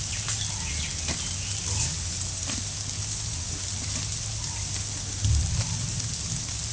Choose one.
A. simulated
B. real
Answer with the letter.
B